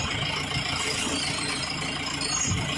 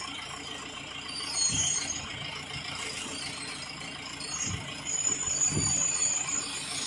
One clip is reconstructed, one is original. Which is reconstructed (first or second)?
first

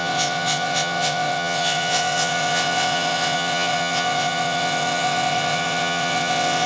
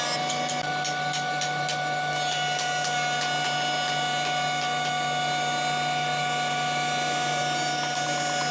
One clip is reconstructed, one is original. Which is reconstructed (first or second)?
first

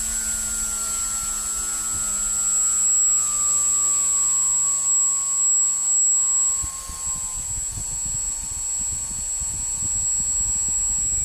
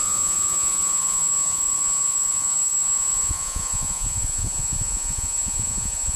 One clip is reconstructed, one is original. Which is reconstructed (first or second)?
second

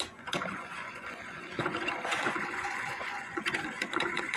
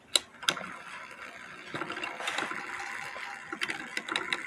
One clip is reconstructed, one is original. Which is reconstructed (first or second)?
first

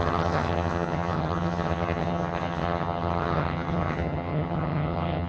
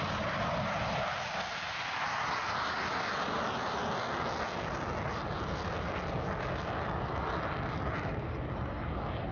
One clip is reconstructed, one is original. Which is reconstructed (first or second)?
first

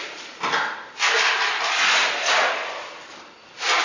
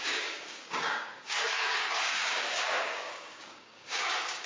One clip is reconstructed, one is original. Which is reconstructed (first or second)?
second